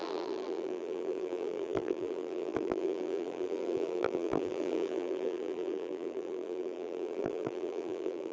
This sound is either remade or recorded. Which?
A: remade